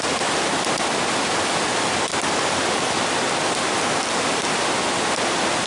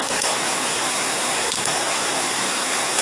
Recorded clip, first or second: first